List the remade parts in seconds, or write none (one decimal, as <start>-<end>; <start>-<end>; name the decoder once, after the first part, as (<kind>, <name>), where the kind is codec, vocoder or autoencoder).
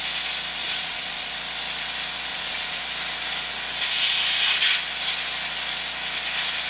0.6-1.3 (vocoder, Vocos); 2.3-2.8